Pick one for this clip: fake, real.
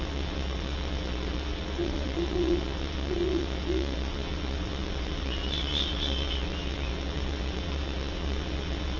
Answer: fake